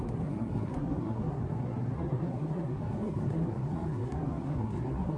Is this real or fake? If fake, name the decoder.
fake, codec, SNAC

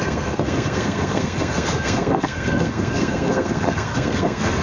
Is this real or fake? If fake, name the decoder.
fake, codec, SNAC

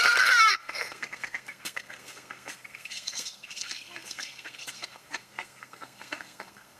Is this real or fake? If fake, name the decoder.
fake, codec, SNAC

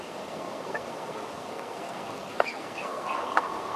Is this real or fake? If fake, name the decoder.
fake, codec, SNAC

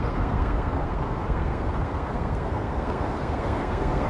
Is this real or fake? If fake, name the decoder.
fake, codec, SNAC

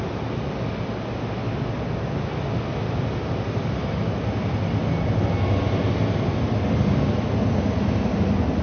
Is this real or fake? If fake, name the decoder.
real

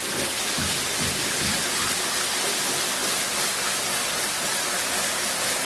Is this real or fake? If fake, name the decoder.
real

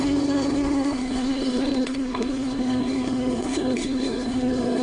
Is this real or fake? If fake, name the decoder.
fake, codec, SNAC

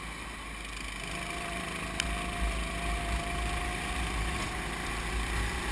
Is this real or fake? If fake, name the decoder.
real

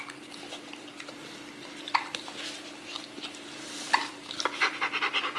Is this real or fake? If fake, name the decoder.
real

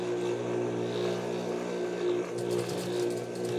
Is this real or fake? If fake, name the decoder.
real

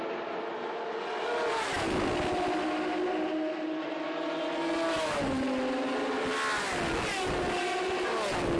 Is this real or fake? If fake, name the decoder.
real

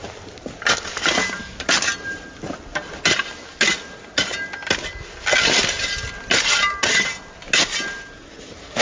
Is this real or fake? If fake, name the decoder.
real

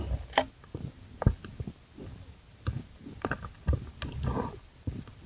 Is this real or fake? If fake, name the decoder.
real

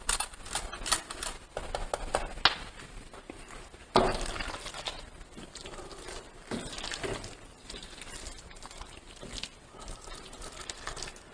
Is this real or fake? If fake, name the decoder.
real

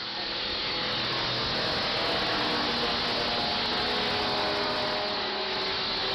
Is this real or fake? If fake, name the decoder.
real